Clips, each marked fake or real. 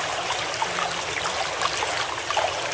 real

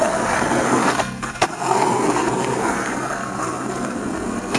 fake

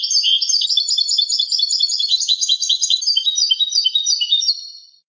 fake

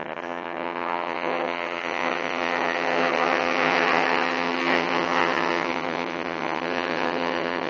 fake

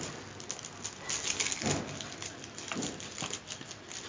real